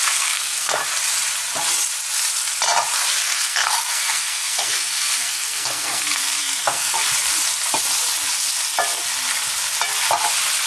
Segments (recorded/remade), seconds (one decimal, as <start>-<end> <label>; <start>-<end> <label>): 0.0-0.8 remade; 0.8-3.2 recorded; 3.2-7.0 remade; 7.0-10.7 recorded